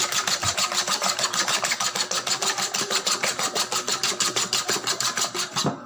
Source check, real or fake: fake